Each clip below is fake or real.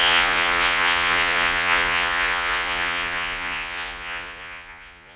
fake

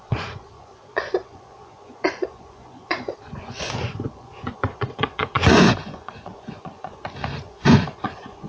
fake